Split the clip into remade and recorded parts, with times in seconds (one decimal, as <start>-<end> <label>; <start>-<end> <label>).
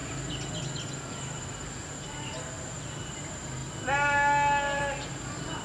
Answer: 0.0-5.6 recorded